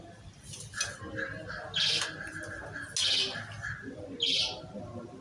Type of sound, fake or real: real